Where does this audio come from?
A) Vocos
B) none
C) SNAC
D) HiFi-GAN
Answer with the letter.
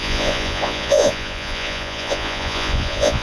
A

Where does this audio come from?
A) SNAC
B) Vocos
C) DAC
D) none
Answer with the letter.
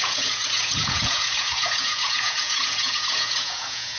B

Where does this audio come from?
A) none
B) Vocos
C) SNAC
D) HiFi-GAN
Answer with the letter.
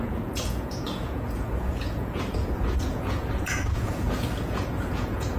B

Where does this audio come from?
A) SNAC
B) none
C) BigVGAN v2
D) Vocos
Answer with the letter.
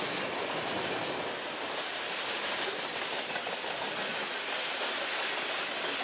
B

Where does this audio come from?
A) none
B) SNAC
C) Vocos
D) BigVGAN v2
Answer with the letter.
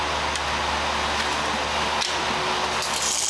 A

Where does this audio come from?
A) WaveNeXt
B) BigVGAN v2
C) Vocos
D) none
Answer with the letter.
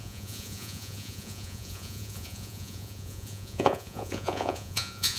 C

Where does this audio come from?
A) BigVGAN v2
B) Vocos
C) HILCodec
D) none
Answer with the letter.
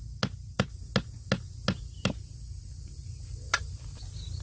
D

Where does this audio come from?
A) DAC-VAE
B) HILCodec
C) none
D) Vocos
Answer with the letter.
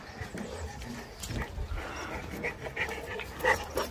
C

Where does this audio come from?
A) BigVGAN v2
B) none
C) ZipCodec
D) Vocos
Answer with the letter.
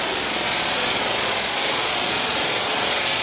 D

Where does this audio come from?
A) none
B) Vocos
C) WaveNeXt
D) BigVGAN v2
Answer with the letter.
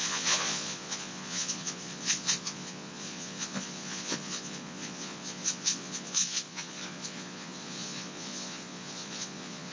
B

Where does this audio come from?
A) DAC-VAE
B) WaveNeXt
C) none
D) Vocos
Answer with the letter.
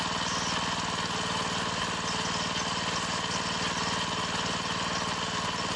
C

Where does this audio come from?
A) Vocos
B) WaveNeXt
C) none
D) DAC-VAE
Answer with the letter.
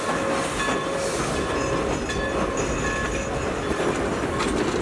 C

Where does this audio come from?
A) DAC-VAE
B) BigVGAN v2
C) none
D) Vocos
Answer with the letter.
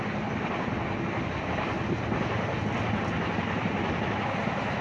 C